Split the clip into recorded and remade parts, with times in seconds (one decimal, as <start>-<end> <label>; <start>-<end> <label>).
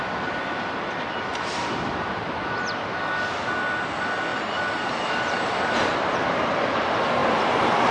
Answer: 0.0-1.3 recorded; 1.3-2.2 remade; 2.2-4.3 recorded; 4.3-5.1 remade; 5.1-5.9 recorded; 5.9-6.8 remade; 6.8-7.9 recorded